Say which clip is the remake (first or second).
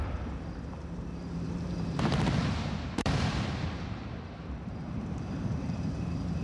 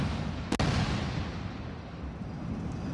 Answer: first